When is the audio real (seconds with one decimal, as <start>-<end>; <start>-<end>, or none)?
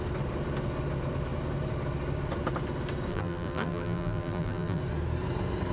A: 0.0-3.1; 4.8-5.7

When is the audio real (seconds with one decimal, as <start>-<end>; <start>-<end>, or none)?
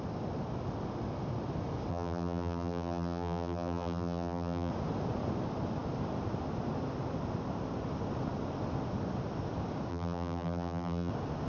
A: 0.0-1.9; 4.7-9.9; 11.1-11.5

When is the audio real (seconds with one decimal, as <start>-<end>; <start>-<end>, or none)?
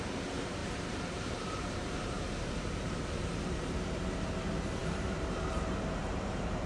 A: 0.0-0.6; 4.0-6.0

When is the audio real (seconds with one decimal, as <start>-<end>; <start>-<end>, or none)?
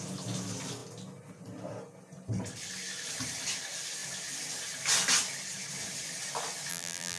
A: 0.0-6.7